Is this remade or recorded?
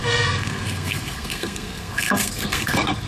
remade